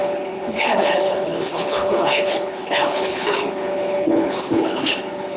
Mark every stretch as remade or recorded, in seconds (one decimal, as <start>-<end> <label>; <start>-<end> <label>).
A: 0.0-5.4 remade